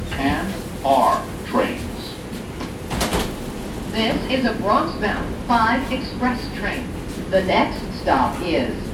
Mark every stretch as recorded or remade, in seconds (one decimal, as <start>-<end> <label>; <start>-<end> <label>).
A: 0.0-8.9 recorded